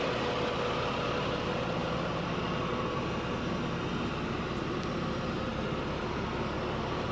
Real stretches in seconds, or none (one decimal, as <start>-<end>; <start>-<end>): 0.0-7.1